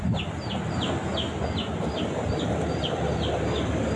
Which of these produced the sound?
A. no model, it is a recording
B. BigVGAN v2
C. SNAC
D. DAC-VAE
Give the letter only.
A